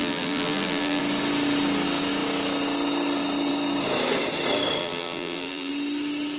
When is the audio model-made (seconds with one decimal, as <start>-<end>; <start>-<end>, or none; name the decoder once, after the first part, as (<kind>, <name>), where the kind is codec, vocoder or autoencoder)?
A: 0.0-1.0 (vocoder, BigVGAN v2); 4.8-5.7